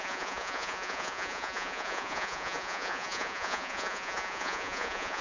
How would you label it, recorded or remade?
remade